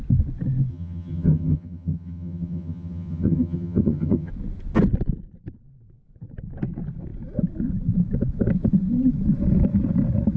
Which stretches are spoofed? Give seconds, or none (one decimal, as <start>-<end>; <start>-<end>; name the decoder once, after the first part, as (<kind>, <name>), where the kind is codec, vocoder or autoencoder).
0.7-4.3 (vocoder, HiFi-GAN)